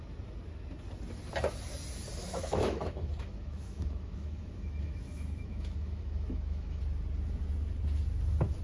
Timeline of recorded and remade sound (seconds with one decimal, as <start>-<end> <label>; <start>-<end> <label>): 0.0-2.2 recorded; 2.2-6.8 remade; 6.8-8.6 recorded